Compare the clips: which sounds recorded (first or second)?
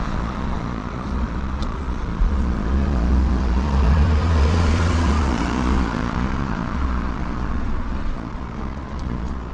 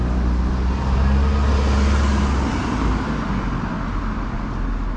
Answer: second